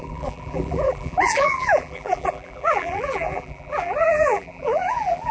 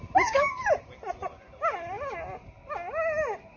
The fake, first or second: first